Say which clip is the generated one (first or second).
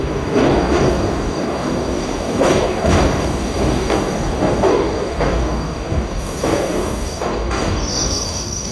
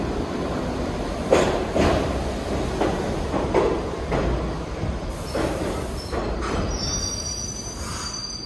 first